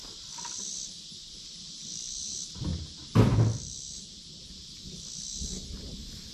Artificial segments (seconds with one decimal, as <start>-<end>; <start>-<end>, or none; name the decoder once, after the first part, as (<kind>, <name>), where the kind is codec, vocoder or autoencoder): none